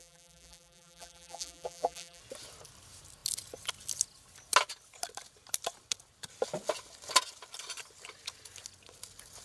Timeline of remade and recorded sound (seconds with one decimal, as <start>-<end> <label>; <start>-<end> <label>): 0.0-2.2 remade; 2.2-9.4 recorded